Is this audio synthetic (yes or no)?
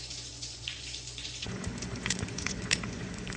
yes